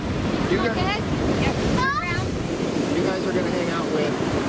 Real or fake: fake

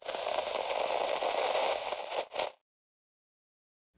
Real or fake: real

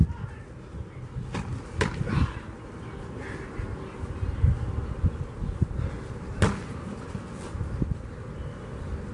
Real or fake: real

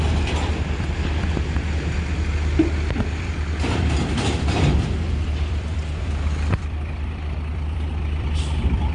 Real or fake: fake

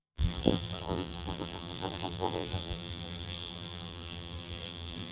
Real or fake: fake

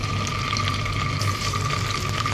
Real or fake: real